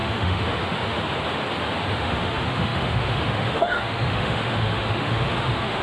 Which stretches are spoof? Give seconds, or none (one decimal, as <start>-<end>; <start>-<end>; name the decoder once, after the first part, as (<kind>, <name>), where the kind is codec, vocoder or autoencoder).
0.0-1.0 (autoencoder, DAC-VAE); 1.9-5.8